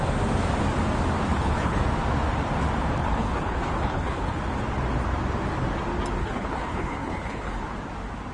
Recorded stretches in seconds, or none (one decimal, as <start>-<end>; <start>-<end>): 0.0-1.3; 1.8-3.0; 4.4-6.2; 7.6-8.3